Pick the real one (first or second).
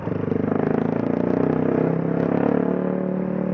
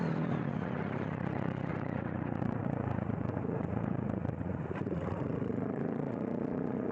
first